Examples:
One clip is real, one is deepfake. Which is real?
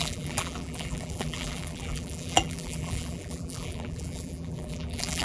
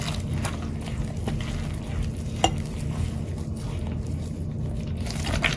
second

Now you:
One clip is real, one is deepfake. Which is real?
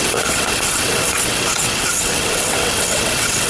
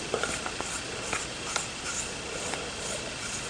second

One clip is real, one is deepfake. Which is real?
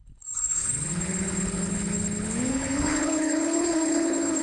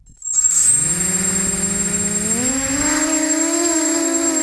second